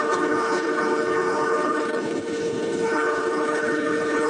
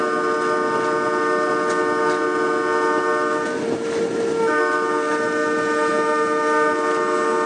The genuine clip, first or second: second